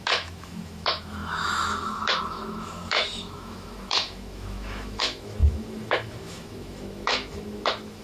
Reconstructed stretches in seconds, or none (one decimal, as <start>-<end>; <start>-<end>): 0.0-8.0

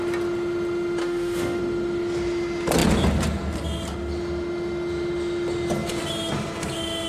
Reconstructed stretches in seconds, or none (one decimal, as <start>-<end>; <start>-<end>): 1.0-1.6

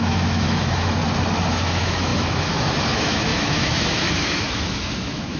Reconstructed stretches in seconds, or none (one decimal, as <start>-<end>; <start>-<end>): 0.0-1.0; 1.5-5.4

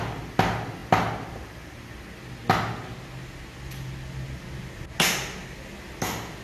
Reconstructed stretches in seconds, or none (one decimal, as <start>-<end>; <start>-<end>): none

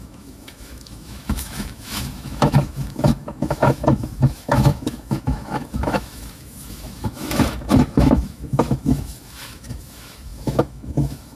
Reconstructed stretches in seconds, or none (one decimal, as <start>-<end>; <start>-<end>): 0.0-11.4

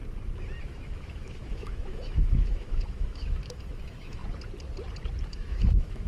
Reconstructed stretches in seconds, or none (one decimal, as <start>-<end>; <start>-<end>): 0.6-4.2; 5.3-6.1

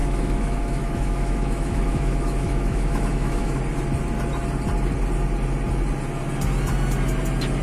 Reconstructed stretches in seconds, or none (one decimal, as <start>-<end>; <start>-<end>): 0.0-3.6